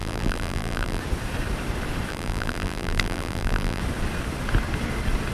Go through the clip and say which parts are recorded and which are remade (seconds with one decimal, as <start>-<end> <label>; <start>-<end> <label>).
0.0-1.0 remade; 1.0-2.1 recorded; 2.1-3.8 remade; 3.8-5.3 recorded